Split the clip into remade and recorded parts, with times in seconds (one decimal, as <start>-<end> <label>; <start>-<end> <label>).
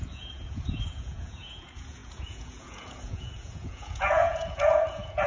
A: 0.0-5.3 remade